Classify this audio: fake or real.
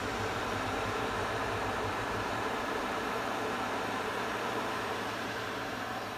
fake